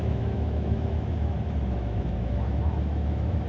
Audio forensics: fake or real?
fake